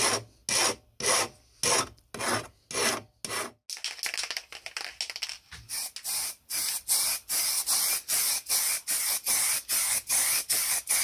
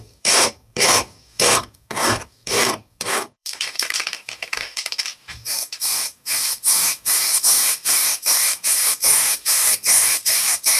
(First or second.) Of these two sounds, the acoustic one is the first